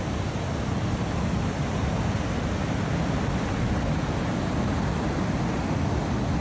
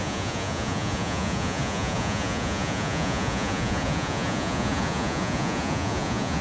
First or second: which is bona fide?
first